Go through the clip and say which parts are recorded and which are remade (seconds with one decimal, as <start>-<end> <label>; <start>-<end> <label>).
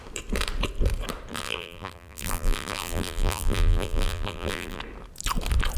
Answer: 0.0-1.3 recorded; 1.3-4.8 remade; 4.8-5.8 recorded